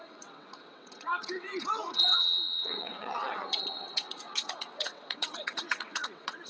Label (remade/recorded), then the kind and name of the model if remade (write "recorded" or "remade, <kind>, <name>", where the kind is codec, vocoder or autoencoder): remade, vocoder, WaveNeXt